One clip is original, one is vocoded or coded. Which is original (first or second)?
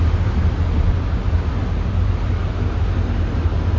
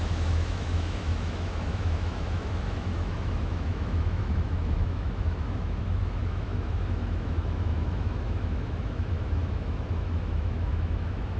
first